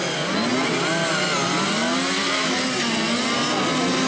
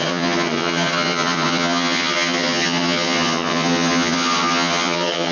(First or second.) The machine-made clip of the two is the second